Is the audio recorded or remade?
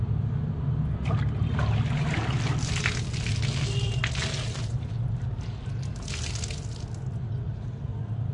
recorded